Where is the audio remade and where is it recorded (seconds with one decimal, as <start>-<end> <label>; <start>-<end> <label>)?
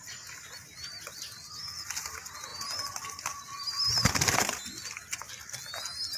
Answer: 0.0-6.2 recorded